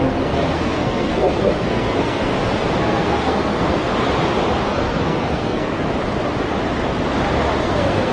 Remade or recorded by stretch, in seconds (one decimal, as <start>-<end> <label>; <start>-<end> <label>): 0.0-2.3 remade; 2.3-2.8 recorded; 2.8-3.9 remade; 3.9-4.7 recorded; 4.7-5.7 remade; 5.7-7.6 recorded; 7.6-8.1 remade